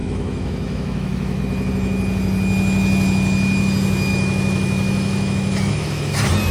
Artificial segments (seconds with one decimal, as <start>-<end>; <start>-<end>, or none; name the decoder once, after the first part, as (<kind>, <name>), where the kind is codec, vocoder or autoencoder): 0.0-1.4 (autoencoder, DAC-VAE); 4.1-6.1